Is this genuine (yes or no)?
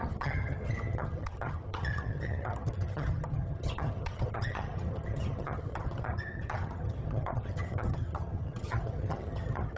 no